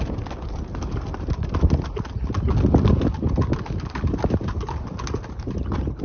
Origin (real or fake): real